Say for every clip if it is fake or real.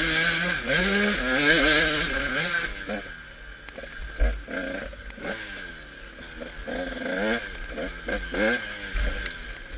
real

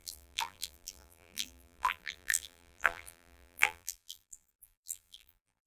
fake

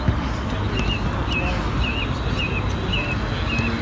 real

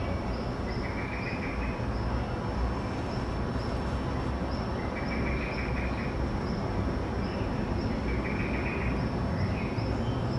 real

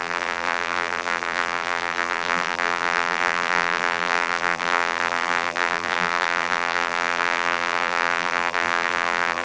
fake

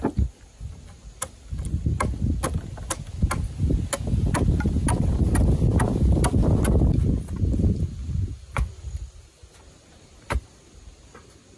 real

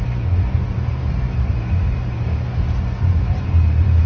fake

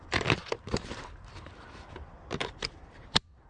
fake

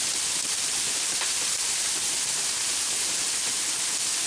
real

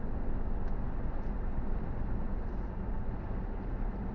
real